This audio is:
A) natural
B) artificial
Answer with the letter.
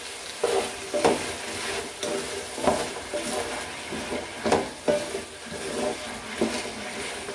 A